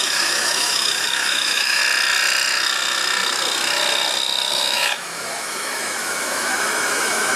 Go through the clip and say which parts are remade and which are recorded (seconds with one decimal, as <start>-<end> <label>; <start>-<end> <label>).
0.0-1.8 remade; 1.8-4.5 recorded; 4.5-7.4 remade